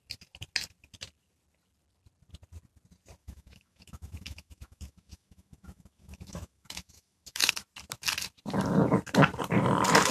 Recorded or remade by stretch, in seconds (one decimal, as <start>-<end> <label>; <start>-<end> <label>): 0.0-3.2 recorded; 3.2-7.5 remade; 7.5-10.1 recorded